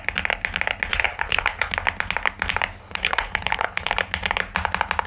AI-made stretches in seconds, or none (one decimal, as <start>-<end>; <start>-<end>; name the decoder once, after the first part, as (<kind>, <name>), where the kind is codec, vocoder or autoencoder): 0.9-1.7 (codec, HILCodec); 2.8-3.9